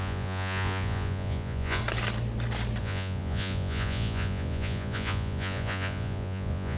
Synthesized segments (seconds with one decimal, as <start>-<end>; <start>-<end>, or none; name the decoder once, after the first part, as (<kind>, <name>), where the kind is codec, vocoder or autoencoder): 0.0-1.8 (vocoder, Vocos); 2.8-6.8